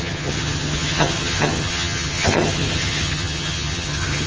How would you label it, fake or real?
fake